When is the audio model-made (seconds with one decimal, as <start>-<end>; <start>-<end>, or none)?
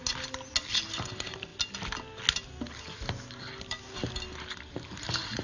none